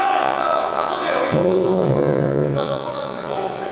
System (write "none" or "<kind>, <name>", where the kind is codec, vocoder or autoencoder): vocoder, WaveNeXt